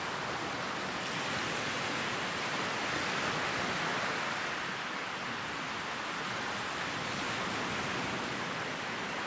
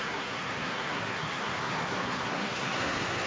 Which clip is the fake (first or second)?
second